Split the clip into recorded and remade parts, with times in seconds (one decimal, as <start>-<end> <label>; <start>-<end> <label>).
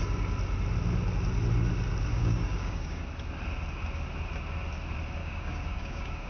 0.0-2.1 recorded; 2.1-3.0 remade; 3.0-5.2 recorded; 5.2-6.3 remade